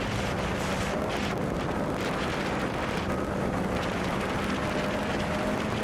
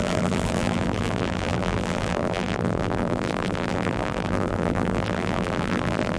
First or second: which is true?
first